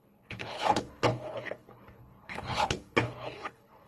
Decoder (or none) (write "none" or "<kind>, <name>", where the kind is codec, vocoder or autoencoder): codec, HILCodec